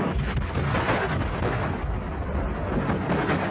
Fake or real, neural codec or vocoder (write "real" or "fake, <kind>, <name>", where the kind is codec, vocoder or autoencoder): real